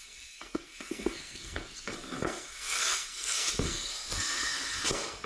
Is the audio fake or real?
fake